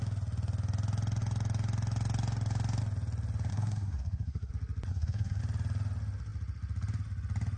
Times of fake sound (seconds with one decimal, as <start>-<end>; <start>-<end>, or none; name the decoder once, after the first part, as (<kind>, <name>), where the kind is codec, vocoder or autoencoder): 3.5-4.5 (codec, SNAC); 4.9-5.4